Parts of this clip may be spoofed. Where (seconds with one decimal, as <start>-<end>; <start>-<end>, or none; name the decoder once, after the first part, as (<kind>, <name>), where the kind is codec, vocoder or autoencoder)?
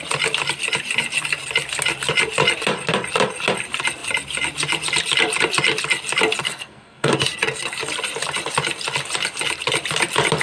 6.4-7.1 (codec, SNAC)